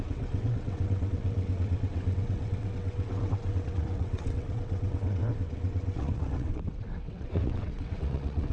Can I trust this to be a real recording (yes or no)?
no